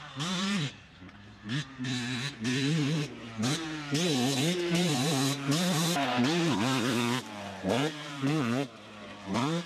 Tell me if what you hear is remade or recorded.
remade